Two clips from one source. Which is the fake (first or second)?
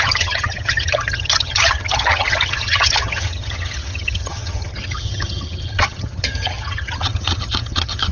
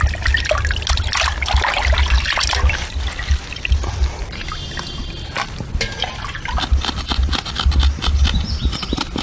first